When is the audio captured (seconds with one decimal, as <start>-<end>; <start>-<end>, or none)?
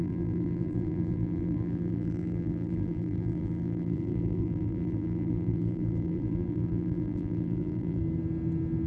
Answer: 8.0-8.9